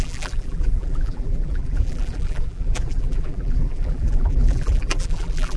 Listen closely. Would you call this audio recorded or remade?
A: remade